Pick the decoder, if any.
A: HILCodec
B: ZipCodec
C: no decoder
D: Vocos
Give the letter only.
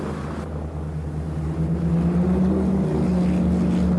C